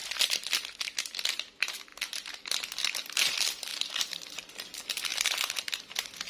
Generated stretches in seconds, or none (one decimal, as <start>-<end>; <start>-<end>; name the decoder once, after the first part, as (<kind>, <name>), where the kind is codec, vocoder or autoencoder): 1.9-3.3 (vocoder, BigVGAN v2); 3.7-4.5; 5.1-5.8